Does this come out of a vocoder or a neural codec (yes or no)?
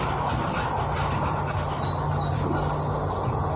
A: no